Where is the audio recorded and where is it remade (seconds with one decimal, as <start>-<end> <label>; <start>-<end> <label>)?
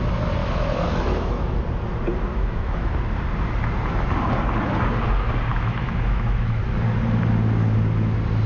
0.0-0.4 recorded; 0.4-1.6 remade; 1.6-2.3 recorded; 2.3-2.9 remade; 2.9-5.5 recorded; 5.5-6.6 remade; 6.6-8.5 recorded